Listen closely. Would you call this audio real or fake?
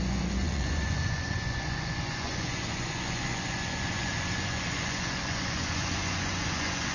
fake